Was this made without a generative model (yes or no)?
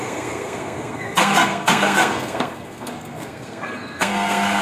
no